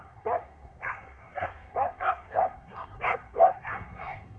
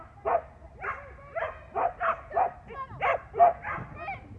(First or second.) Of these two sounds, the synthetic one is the first